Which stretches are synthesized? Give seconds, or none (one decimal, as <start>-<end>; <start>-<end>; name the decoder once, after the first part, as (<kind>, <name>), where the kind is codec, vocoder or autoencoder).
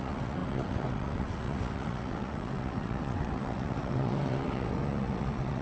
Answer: 0.0-5.6 (vocoder, WaveNeXt)